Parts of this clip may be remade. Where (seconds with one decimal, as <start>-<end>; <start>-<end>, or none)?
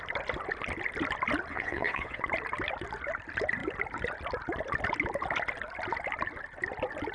1.5-2.2